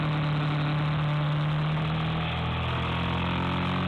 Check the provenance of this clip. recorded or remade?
recorded